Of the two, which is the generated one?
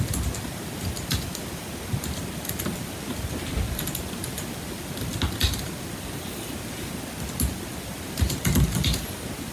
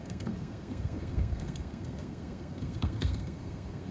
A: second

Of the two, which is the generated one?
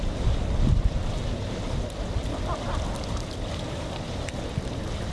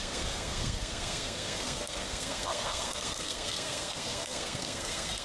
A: second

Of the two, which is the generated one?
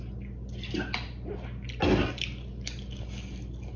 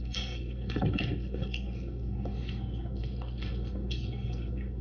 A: second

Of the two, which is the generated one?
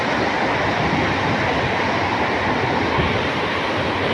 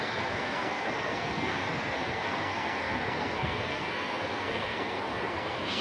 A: second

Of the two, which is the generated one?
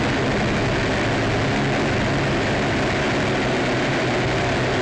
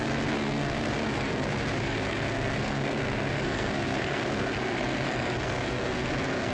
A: second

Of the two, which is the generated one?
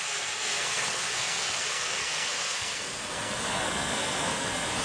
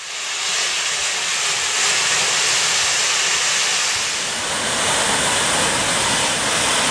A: first